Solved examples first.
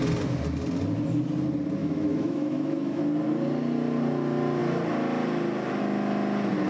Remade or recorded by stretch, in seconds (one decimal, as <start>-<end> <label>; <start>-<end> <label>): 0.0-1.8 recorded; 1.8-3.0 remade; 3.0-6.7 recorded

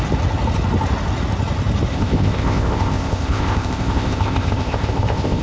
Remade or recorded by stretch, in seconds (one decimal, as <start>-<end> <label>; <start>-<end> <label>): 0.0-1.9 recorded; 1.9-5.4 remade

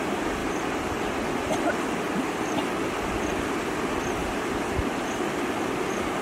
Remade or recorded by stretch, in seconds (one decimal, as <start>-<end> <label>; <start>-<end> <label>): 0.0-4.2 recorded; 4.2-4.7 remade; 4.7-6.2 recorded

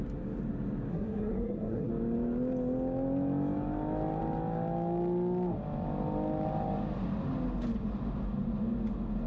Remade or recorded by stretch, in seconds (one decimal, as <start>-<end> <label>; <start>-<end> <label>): 0.0-0.9 recorded; 0.9-1.9 remade; 1.9-9.3 recorded